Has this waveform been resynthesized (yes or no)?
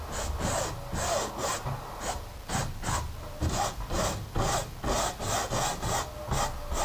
no